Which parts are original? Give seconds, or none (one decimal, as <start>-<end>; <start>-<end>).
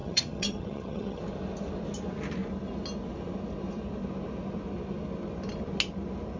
1.2-6.4